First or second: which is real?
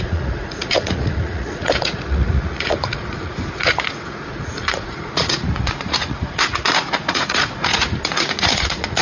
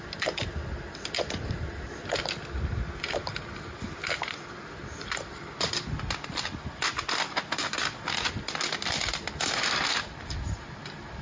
second